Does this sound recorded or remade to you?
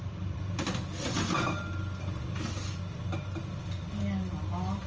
recorded